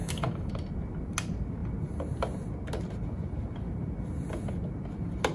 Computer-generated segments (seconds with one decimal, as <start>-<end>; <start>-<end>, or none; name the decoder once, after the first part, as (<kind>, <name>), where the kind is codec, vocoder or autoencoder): 0.0-0.5 (autoencoder, DAC-VAE)